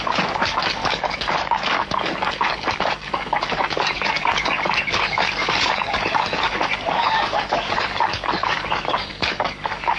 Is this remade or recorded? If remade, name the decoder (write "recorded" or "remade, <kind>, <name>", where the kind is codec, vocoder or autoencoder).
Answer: remade, codec, DAC